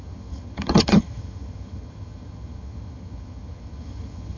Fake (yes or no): yes